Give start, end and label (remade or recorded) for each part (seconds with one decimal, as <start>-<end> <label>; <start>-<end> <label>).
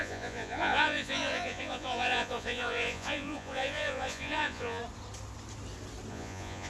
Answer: 0.0-4.8 remade; 4.8-6.1 recorded; 6.1-6.7 remade